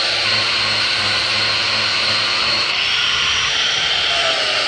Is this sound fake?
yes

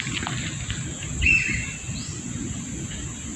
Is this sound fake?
no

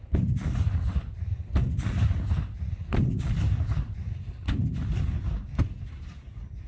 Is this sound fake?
no